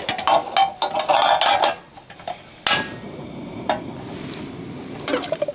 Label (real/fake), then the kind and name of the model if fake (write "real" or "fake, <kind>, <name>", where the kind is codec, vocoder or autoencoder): real